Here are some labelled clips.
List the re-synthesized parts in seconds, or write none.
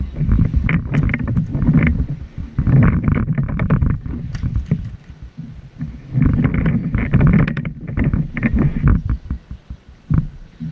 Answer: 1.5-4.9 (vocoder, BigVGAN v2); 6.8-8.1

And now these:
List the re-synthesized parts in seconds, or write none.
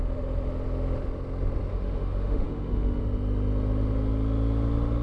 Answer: 1.7-3.0 (autoencoder, DAC-VAE)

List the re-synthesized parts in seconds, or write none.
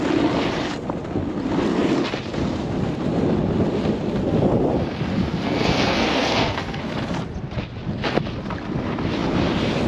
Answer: 5.1-6.8 (codec, SNAC)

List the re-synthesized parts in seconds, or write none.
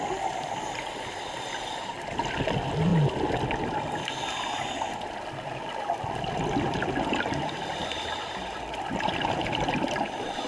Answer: none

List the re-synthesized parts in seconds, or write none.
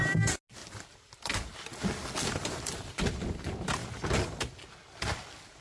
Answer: none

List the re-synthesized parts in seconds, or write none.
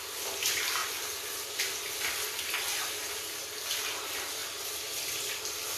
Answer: none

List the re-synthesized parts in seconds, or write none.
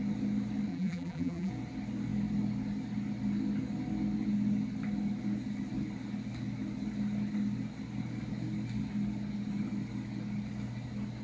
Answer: 0.7-1.5 (vocoder, BigVGAN v2)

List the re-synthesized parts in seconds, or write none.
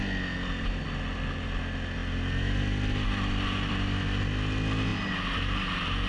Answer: none